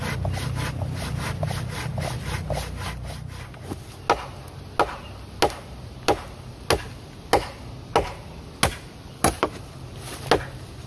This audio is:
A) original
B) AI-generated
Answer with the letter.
A